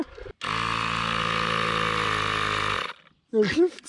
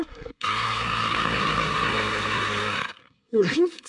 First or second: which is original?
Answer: first